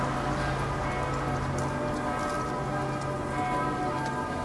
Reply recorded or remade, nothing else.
recorded